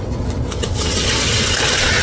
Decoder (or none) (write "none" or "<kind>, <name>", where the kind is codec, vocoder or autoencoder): vocoder, WaveNeXt